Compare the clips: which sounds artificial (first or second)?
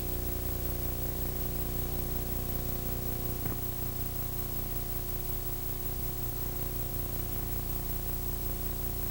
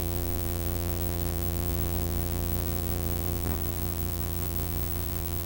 second